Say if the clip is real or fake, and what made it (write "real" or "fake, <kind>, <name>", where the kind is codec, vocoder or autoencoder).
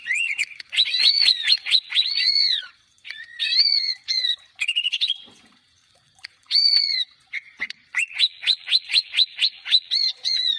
fake, vocoder, Vocos